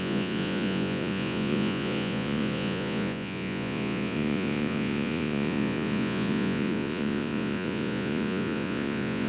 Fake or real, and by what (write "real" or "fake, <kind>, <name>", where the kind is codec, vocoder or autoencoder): fake, vocoder, Vocos